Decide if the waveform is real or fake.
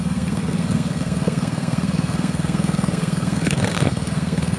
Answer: fake